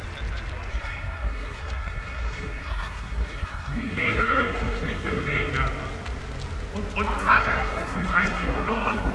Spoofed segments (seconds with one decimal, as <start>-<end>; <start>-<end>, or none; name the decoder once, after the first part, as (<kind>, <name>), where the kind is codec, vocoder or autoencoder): 0.7-5.5 (codec, SNAC); 7.2-9.1